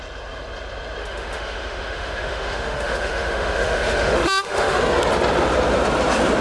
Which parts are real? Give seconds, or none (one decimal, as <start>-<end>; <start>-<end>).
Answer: 0.0-1.0; 4.8-6.4